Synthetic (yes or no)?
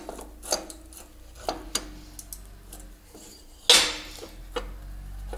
no